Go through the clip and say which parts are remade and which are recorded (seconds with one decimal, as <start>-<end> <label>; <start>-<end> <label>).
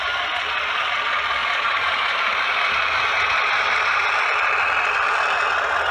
0.0-1.4 recorded; 1.4-4.1 remade; 4.1-5.9 recorded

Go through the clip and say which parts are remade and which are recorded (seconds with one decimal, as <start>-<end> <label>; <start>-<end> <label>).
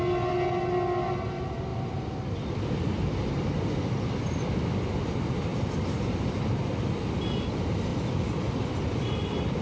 0.0-1.7 recorded; 1.7-3.5 remade; 3.5-5.5 recorded; 5.5-6.3 remade; 6.3-7.9 recorded; 7.9-8.8 remade; 8.8-9.6 recorded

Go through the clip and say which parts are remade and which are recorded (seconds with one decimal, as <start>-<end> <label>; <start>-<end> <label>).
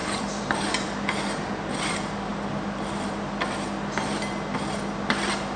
0.0-1.5 remade; 1.5-5.6 recorded